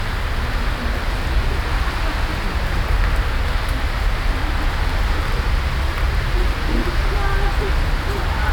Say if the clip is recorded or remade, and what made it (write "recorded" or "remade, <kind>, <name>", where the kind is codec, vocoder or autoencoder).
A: recorded